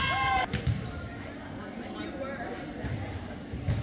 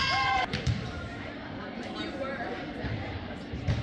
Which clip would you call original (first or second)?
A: first